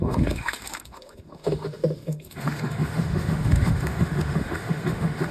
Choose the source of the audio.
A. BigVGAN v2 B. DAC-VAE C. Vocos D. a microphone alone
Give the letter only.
B